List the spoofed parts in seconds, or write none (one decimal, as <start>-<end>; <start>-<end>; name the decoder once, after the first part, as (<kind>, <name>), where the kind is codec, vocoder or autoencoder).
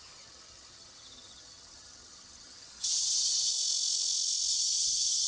0.0-3.5 (vocoder, HiFi-GAN); 4.5-5.3